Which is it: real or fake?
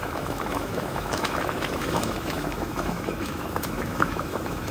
fake